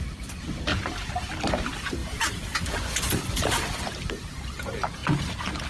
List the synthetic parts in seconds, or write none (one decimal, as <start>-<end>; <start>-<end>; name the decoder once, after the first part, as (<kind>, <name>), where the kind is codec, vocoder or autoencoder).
0.7-1.3 (vocoder, BigVGAN v2); 2.0-3.8